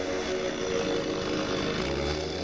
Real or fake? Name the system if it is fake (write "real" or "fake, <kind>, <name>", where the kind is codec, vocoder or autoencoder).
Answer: real